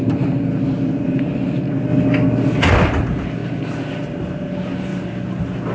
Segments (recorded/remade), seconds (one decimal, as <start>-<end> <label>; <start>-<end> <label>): 0.0-5.7 recorded